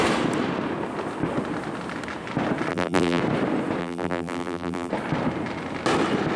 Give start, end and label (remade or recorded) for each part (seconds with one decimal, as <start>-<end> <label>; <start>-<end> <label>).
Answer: 0.0-2.7 recorded; 2.7-3.2 remade; 3.2-3.8 recorded; 3.8-4.9 remade; 4.9-6.4 recorded